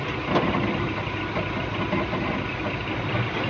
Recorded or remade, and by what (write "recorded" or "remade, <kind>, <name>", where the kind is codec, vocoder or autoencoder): recorded